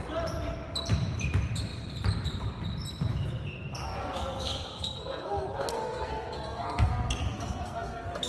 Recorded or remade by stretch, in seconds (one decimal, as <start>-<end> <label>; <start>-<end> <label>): 0.0-3.7 recorded; 3.7-8.3 remade